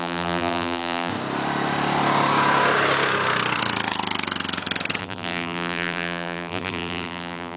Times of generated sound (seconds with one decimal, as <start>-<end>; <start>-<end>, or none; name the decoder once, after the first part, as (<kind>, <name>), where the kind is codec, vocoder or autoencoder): 0.0-1.1 (vocoder, BigVGAN v2); 5.0-7.6